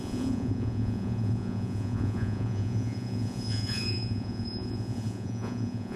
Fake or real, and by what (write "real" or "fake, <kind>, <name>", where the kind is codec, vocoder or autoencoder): fake, vocoder, Vocos